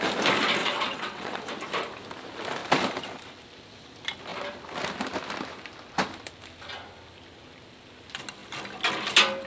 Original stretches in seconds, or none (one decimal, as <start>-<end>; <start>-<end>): 0.0-0.6; 1.4-9.5